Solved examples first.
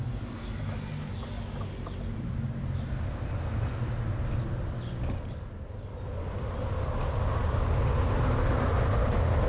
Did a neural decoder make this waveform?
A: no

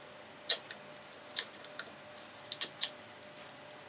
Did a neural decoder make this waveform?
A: no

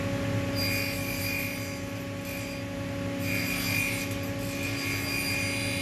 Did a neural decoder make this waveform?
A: no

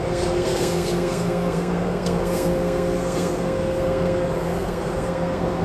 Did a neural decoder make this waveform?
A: yes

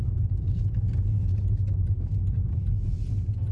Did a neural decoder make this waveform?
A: no